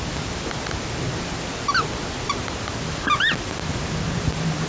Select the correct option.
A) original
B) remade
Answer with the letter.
A